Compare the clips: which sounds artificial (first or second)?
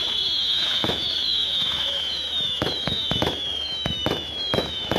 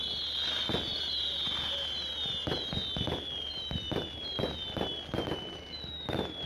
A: first